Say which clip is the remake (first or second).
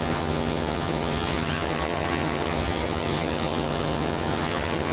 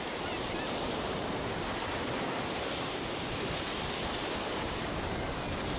first